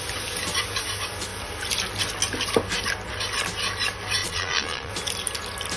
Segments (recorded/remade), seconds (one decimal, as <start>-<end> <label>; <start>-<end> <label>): 0.0-4.2 recorded; 4.2-4.9 remade; 4.9-5.8 recorded

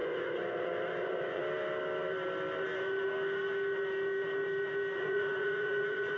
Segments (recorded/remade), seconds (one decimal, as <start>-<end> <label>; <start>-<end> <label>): 0.0-1.4 remade; 1.4-5.0 recorded; 5.0-6.2 remade

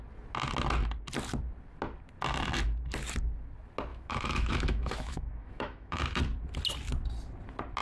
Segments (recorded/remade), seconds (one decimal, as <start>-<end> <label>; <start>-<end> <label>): 0.0-3.9 recorded; 3.9-6.0 remade; 6.0-7.8 recorded

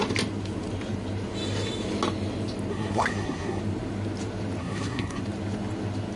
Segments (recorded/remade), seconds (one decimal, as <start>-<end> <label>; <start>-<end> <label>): 0.0-2.7 recorded; 2.7-3.6 remade; 3.6-4.6 recorded; 4.6-5.2 remade; 5.2-6.2 recorded

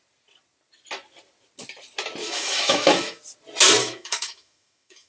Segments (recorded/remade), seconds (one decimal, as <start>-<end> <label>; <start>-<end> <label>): 0.0-2.2 recorded; 2.2-3.2 remade; 3.2-3.8 recorded; 3.8-5.1 remade

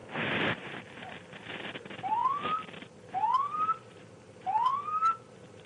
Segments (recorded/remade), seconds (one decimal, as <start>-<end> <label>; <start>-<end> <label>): 0.0-1.8 recorded; 1.8-2.2 remade; 2.2-4.1 recorded; 4.1-4.7 remade; 4.7-5.3 recorded; 5.3-5.7 remade